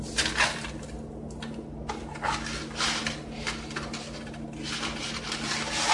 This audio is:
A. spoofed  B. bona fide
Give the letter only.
B